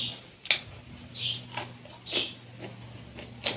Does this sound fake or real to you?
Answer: real